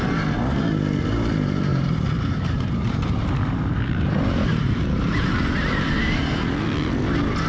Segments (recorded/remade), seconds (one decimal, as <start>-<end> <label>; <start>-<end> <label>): 0.0-1.7 recorded; 1.7-6.2 remade; 6.2-7.5 recorded